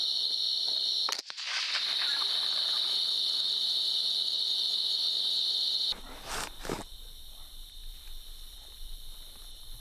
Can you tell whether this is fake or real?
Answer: real